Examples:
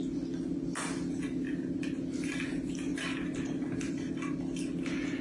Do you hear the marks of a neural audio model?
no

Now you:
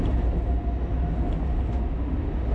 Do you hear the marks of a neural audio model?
no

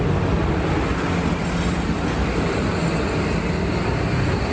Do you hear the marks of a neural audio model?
no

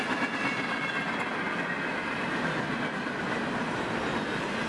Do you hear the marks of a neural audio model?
no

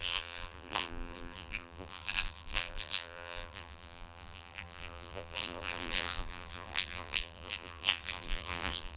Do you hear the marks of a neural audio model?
yes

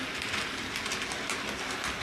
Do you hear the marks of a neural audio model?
no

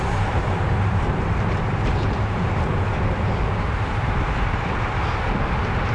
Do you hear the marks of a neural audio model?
yes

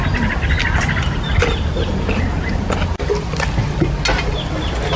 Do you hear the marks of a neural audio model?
no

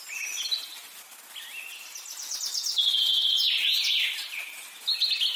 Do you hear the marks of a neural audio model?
no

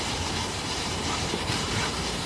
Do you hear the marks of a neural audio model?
yes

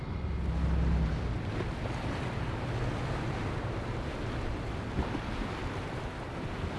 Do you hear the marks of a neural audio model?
no